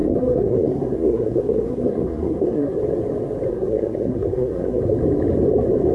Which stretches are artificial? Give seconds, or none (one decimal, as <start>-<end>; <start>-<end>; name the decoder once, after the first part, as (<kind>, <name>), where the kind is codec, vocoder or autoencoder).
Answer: 0.0-2.8 (codec, SNAC); 3.5-4.8